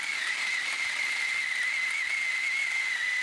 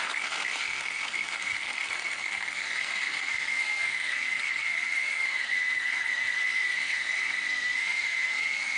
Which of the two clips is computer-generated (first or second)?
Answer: second